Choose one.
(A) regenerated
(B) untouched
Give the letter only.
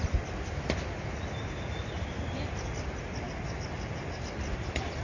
B